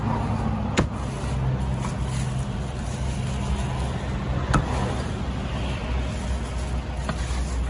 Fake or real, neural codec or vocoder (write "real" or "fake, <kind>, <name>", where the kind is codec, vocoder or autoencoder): real